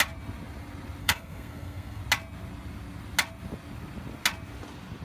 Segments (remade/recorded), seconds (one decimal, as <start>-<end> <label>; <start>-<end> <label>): 0.0-1.0 recorded; 1.0-2.0 remade; 2.0-5.0 recorded